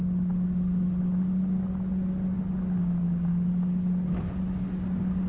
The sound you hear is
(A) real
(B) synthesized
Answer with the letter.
A